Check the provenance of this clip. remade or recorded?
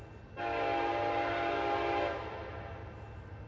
recorded